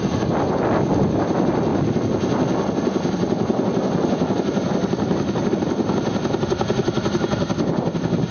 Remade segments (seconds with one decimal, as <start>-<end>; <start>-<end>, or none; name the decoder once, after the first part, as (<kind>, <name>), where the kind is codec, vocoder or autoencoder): none